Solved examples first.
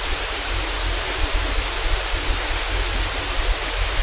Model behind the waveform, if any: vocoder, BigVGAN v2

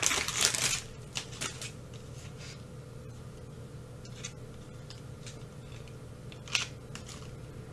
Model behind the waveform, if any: none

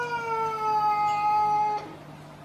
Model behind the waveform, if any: none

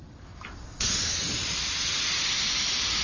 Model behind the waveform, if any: none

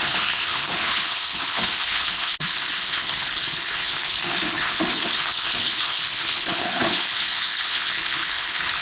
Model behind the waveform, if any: codec, HILCodec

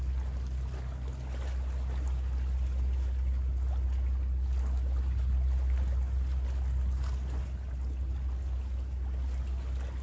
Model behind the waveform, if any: none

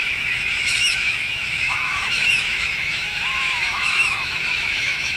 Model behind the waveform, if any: autoencoder, DAC-VAE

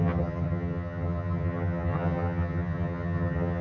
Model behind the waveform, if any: vocoder, HiFi-GAN